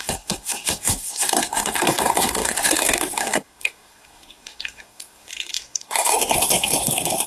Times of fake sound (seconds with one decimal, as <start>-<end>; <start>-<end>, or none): 0.0-7.3